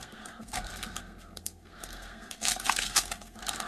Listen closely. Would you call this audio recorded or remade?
remade